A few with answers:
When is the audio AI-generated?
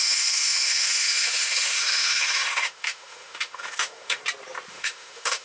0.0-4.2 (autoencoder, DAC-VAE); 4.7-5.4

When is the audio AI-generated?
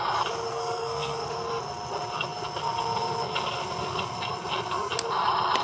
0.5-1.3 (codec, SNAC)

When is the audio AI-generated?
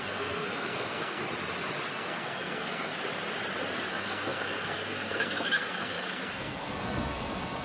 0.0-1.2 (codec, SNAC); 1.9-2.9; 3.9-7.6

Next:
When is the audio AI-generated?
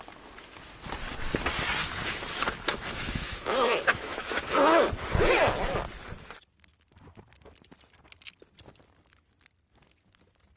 2.0-4.9 (autoencoder, DAC-VAE)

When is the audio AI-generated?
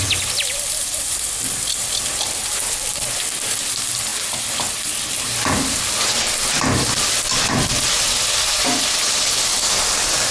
0.0-4.1 (vocoder, BigVGAN v2); 5.1-10.3